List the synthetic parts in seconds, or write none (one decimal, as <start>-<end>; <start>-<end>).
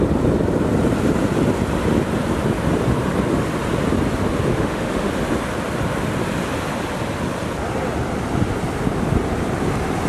4.5-5.1